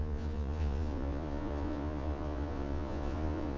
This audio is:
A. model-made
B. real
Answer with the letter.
A